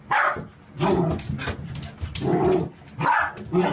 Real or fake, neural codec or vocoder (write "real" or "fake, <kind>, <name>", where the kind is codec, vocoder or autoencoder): real